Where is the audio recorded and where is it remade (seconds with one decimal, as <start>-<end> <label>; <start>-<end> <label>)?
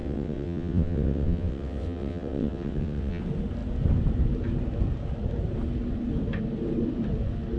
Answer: 0.0-3.2 remade; 3.2-7.6 recorded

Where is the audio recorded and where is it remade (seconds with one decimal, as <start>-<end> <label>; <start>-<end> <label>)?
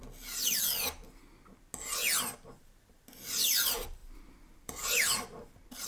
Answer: 0.0-2.6 recorded; 2.6-5.9 remade